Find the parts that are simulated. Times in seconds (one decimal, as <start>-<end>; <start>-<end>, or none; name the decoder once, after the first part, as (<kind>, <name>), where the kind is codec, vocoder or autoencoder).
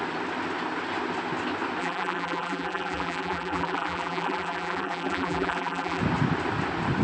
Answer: 1.8-6.0 (vocoder, BigVGAN v2)